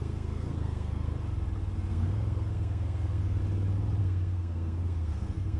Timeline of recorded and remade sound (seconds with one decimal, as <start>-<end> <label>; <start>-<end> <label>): 0.0-1.1 remade; 1.1-1.9 recorded; 1.9-3.4 remade; 3.4-4.0 recorded; 4.0-5.6 remade